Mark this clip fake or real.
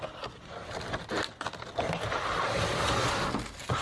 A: real